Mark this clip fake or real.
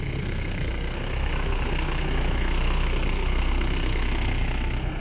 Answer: fake